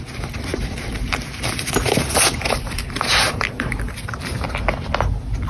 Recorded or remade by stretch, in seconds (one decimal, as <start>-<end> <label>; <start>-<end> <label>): 0.0-0.5 recorded; 0.5-3.8 remade; 3.8-5.5 recorded